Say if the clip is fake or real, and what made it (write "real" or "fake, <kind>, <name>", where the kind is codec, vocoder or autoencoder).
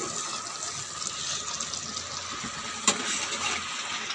real